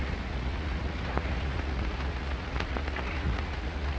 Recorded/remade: remade